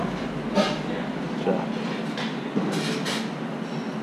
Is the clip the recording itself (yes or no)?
yes